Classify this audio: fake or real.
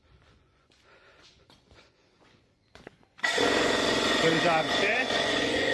fake